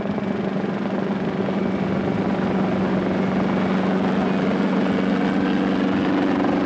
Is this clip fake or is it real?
real